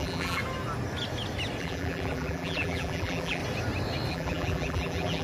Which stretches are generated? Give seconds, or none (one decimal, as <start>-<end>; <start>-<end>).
0.0-0.4; 1.6-3.4; 4.1-5.2